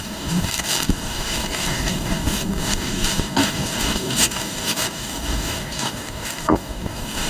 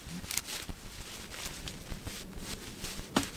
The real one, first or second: second